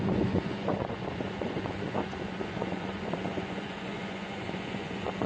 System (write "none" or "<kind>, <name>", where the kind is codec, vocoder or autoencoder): vocoder, Vocos